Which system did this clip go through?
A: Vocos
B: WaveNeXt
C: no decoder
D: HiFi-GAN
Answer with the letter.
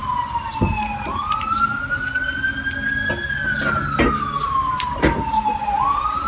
C